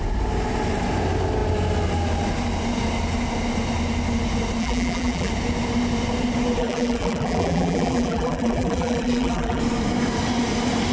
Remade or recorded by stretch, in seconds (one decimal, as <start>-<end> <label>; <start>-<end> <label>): 0.0-4.6 recorded; 4.6-5.3 remade; 5.3-6.6 recorded; 6.6-9.6 remade; 9.6-10.9 recorded